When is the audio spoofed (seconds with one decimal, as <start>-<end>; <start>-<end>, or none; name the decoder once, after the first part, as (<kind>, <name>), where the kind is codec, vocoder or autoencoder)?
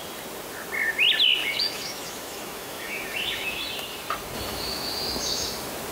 1.4-3.6 (autoencoder, DAC-VAE); 4.5-5.5